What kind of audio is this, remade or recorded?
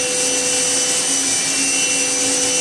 recorded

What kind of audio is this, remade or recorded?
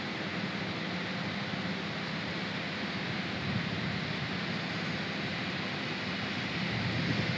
recorded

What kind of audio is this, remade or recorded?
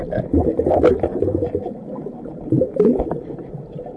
recorded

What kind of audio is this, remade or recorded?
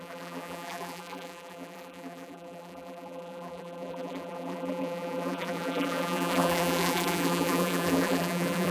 remade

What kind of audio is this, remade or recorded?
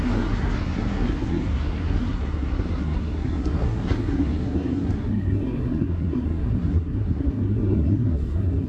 remade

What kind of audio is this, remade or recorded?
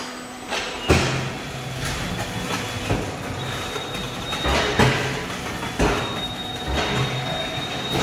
recorded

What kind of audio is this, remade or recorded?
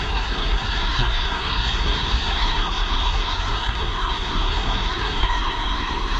remade